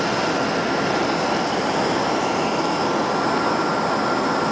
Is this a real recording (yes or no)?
yes